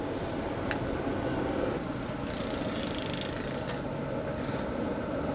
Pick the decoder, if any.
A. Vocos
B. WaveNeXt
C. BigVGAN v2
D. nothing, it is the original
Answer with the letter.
C